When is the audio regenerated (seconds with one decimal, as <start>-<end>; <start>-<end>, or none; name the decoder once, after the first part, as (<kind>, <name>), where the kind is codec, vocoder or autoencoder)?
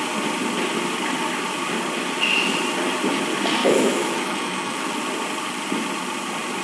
3.6-4.9 (autoencoder, DAC-VAE)